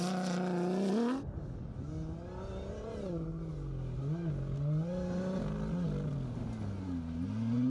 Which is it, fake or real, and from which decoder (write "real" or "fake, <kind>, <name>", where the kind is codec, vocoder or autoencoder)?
real